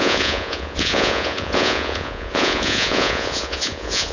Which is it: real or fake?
fake